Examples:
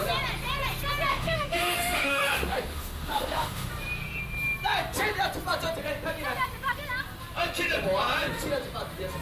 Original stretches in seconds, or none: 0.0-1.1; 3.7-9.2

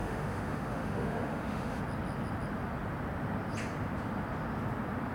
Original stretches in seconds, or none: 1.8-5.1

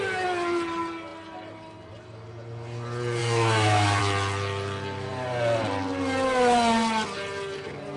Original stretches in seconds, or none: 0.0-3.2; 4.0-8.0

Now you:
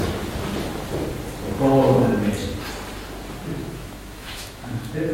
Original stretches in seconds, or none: 0.0-3.6

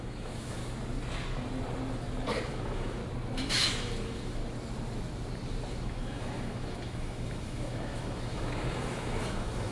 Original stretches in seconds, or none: 0.6-2.4; 3.0-3.5; 4.4-5.7

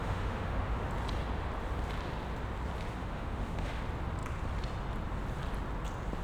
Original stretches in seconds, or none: 0.9-3.0; 3.8-6.2

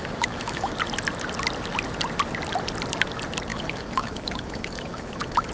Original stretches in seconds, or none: 0.7-3.5

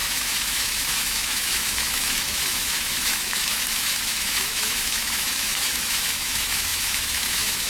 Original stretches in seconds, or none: none